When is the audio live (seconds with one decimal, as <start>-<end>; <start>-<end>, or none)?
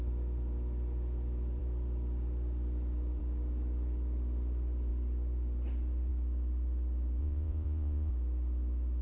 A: 0.0-7.2; 8.1-9.0